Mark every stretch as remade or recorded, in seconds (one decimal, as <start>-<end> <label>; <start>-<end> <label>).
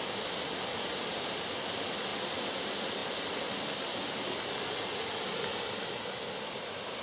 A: 0.0-7.0 recorded